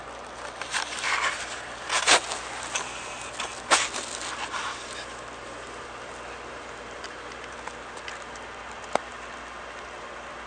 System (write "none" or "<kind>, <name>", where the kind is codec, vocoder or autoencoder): none